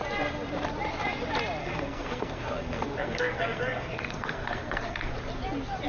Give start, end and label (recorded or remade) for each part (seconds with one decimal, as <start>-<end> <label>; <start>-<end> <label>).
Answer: 0.0-1.6 recorded; 1.6-5.1 remade; 5.1-5.9 recorded